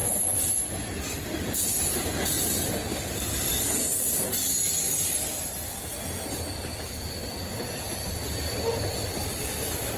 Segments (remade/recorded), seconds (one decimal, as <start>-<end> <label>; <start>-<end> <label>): 0.0-0.6 remade; 0.6-1.4 recorded; 1.4-3.1 remade; 3.1-6.7 recorded; 6.7-8.2 remade; 8.2-10.0 recorded